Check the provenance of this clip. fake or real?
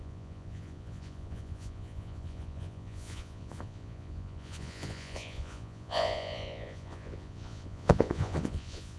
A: fake